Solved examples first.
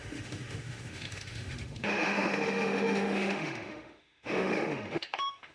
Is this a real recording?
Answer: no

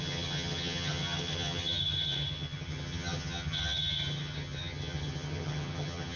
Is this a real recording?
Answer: no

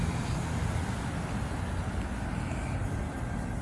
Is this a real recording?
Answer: yes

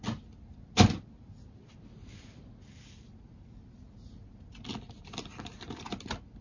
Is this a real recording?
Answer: yes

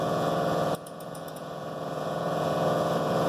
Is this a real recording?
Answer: no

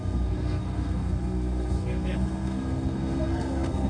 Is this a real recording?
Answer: no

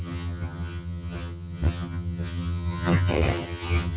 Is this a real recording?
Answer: no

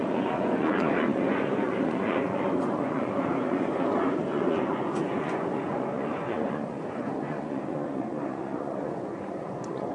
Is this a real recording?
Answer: no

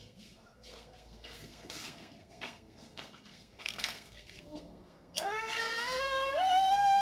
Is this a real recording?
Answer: no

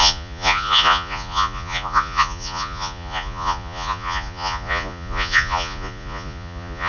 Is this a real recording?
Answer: no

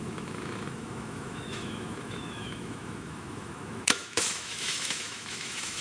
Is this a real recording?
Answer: no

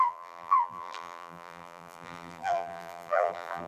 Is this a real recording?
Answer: no